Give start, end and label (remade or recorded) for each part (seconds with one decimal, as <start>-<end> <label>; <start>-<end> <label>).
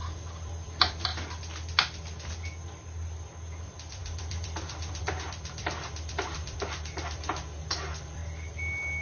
0.0-1.1 remade; 1.1-3.6 recorded; 3.6-8.2 remade; 8.2-9.0 recorded